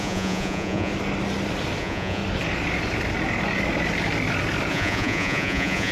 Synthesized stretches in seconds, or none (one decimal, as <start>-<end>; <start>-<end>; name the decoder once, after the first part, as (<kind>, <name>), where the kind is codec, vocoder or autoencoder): 0.0-0.9 (vocoder, Vocos); 1.8-2.2; 4.7-5.9